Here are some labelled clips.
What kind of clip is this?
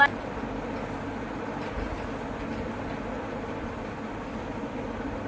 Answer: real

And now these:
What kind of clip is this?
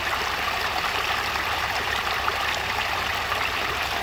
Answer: real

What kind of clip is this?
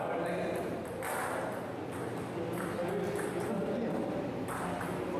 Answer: real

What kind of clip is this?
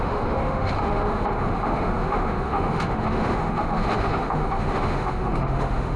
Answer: fake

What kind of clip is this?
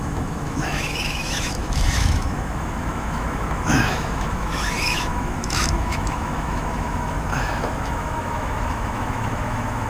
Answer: fake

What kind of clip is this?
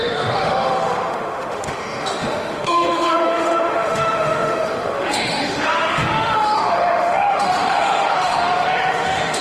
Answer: fake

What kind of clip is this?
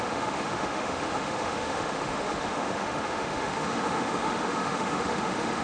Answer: fake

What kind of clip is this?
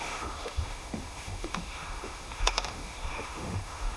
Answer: fake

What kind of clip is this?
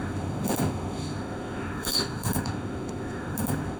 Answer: fake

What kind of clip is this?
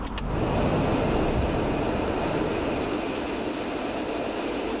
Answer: real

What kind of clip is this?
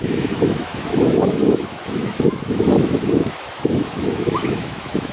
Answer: fake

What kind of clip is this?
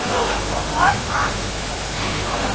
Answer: fake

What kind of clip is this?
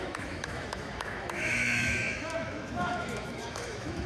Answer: fake